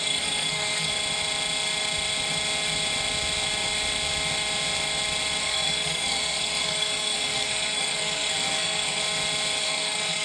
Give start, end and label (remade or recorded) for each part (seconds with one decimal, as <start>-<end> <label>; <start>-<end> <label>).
0.0-0.9 remade; 0.9-5.4 recorded; 5.4-9.0 remade; 9.0-9.6 recorded; 9.6-10.2 remade